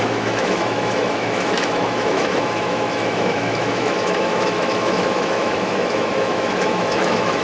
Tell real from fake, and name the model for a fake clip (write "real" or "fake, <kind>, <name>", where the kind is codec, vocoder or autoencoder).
fake, autoencoder, DAC-VAE